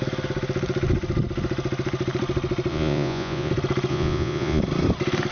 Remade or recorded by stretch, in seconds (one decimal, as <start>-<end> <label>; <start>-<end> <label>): 0.0-2.7 recorded; 2.7-3.5 remade; 3.5-3.9 recorded; 3.9-4.6 remade; 4.6-5.3 recorded